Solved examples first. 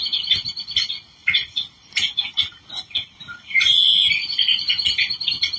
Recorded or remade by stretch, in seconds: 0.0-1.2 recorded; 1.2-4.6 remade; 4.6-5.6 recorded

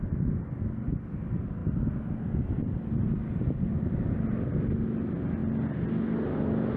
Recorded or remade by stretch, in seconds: 0.0-6.8 recorded

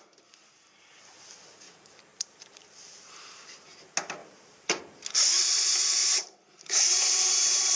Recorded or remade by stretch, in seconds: 0.0-2.1 recorded; 2.1-3.4 remade; 3.4-4.2 recorded; 4.2-4.8 remade; 4.8-6.0 recorded; 6.0-7.8 remade

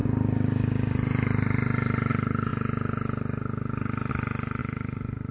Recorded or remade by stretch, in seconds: 0.0-4.6 recorded; 4.6-5.3 remade

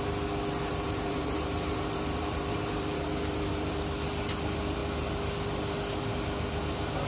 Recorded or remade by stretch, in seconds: 0.0-0.7 recorded; 0.7-3.5 remade; 3.5-7.1 recorded

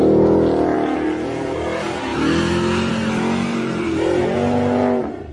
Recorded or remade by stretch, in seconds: 0.0-3.5 recorded; 3.5-4.2 remade; 4.2-5.3 recorded

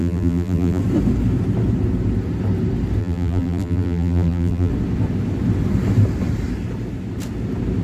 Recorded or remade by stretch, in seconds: 0.0-0.8 remade; 0.8-3.0 recorded; 3.0-4.7 remade; 4.7-7.8 recorded